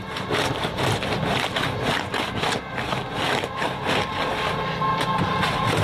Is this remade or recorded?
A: recorded